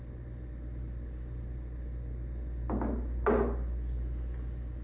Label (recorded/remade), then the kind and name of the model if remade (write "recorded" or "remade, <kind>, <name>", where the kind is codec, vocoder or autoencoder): recorded